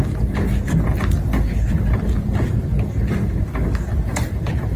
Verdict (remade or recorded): recorded